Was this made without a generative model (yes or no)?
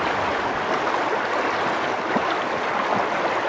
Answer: yes